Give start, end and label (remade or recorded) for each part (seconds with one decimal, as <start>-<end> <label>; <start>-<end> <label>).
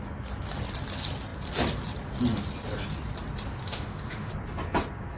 0.0-3.6 recorded; 3.6-4.3 remade; 4.3-5.2 recorded